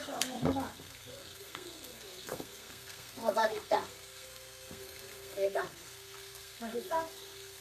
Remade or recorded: remade